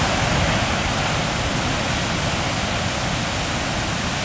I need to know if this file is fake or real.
real